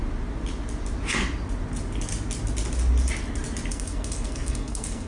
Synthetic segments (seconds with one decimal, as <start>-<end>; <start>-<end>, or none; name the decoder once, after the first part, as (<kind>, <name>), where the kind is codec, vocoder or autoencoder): 3.7-5.1 (codec, SNAC)